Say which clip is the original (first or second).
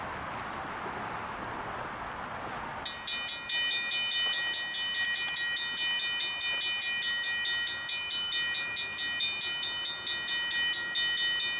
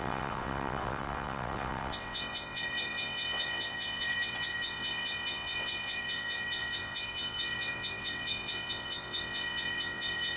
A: first